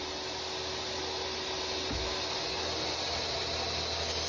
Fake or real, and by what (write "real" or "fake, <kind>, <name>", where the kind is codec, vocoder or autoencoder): real